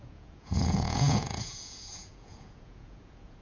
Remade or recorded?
remade